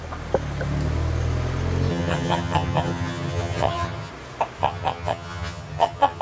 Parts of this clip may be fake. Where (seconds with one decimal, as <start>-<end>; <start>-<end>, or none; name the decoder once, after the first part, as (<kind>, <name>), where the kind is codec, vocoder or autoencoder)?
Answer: 1.9-4.1 (vocoder, HiFi-GAN); 4.6-6.2